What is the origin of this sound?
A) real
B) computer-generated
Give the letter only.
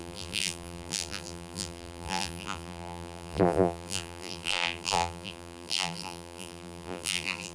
B